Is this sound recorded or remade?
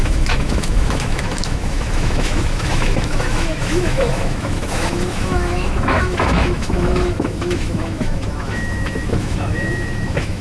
remade